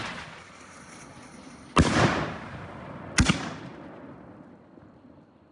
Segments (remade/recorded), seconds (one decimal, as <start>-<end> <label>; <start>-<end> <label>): 0.0-5.5 recorded